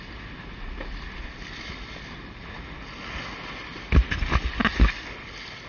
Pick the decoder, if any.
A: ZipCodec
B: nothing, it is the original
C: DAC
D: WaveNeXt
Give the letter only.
B